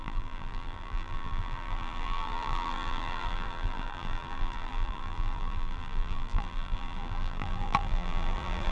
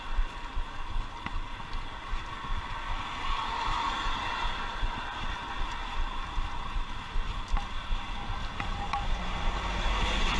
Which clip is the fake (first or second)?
first